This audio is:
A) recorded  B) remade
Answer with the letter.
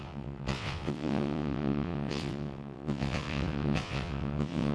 B